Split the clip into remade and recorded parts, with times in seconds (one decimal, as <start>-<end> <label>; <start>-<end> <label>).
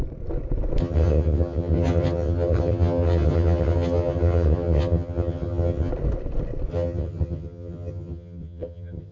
0.0-0.8 recorded; 0.8-5.9 remade; 5.9-6.7 recorded; 6.7-9.1 remade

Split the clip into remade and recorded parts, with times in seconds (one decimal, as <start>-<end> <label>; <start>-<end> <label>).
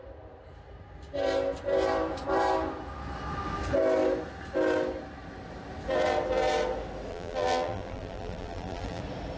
0.0-7.1 recorded; 7.1-9.0 remade; 9.0-9.4 recorded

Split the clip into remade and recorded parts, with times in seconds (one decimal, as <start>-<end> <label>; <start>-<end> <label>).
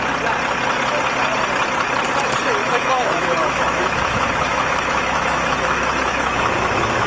0.0-2.6 recorded; 2.6-7.1 remade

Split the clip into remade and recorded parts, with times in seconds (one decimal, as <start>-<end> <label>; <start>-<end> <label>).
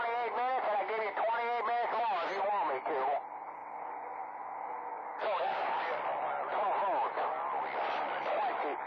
0.0-4.9 recorded; 4.9-5.8 remade; 5.8-8.9 recorded